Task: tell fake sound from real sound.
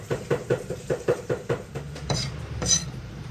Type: fake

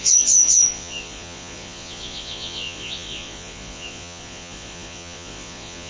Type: fake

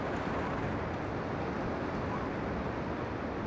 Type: real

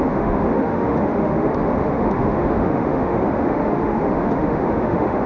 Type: fake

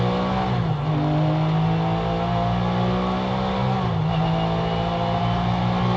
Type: real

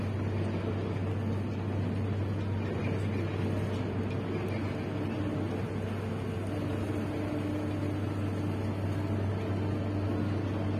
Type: real